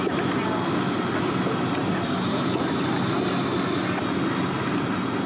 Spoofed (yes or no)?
no